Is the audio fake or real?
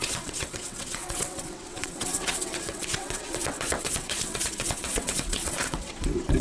fake